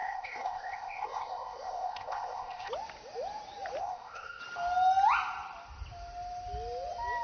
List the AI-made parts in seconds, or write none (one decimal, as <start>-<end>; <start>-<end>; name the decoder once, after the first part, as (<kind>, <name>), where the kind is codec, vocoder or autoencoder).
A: 0.0-2.7 (codec, ZipCodec); 3.8-4.4